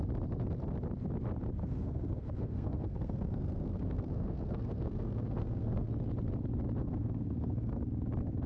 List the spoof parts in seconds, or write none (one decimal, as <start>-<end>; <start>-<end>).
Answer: 1.6-5.9; 6.8-7.8